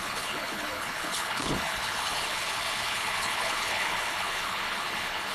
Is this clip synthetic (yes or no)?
yes